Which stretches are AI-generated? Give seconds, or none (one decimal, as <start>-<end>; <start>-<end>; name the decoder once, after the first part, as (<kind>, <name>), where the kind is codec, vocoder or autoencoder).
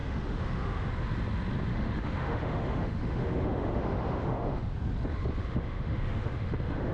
0.0-0.9 (autoencoder, DAC-VAE); 1.7-4.7; 5.4-6.9